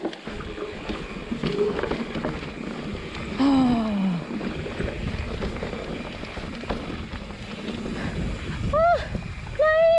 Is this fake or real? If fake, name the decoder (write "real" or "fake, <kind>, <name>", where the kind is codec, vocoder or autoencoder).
real